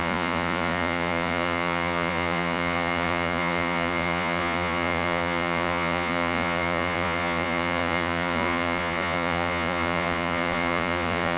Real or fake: fake